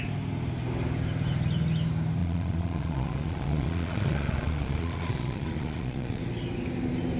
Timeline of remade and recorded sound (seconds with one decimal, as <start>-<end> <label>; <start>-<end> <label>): 0.0-2.2 recorded; 2.2-6.2 remade; 6.2-7.2 recorded